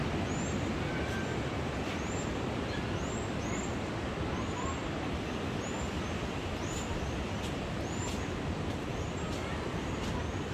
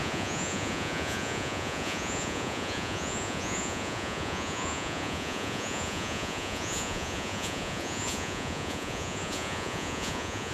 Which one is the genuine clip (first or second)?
first